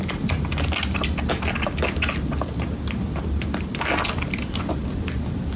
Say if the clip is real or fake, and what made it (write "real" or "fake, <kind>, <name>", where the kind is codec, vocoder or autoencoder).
real